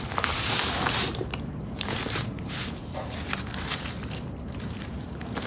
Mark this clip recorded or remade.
remade